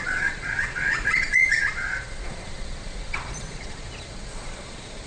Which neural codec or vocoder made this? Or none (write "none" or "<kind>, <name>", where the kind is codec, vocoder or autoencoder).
vocoder, Vocos